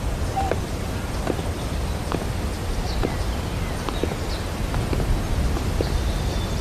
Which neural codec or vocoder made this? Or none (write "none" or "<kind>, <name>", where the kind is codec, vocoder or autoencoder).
none